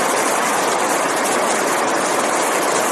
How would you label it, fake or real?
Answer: real